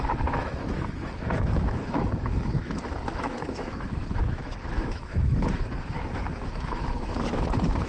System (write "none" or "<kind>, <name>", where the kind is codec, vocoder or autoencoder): autoencoder, DAC-VAE